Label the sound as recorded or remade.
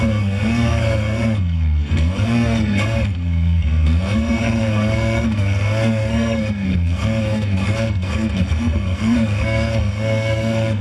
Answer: remade